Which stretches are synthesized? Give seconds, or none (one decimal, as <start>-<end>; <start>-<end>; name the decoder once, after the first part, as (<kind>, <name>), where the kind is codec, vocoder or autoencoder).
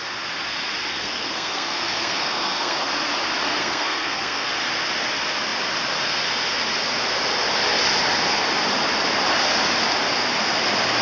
0.9-2.9 (codec, SNAC); 3.6-4.5